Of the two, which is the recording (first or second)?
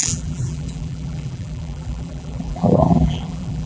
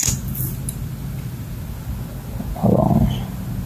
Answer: second